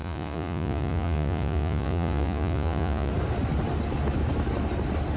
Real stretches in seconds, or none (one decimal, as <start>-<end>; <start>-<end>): 3.1-5.2